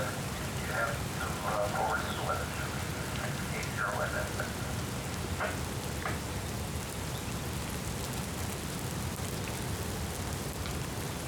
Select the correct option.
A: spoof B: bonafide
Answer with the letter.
B